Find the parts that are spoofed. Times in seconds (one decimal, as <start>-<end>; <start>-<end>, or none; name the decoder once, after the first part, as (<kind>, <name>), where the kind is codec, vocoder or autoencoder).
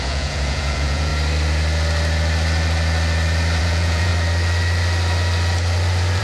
0.0-1.1 (vocoder, Vocos); 3.6-4.1